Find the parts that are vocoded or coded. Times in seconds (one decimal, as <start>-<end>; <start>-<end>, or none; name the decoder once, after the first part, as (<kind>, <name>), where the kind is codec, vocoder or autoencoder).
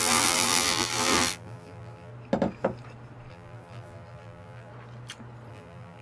0.0-2.1 (vocoder, BigVGAN v2); 3.3-4.7; 5.5-6.0